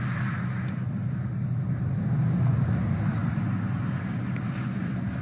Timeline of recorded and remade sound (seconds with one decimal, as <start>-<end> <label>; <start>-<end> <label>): 0.0-5.2 recorded